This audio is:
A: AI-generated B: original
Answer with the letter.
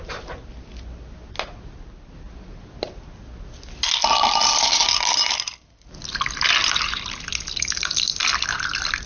B